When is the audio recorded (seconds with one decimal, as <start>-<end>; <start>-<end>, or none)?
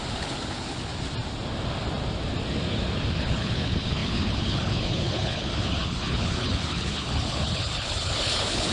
0.9-3.2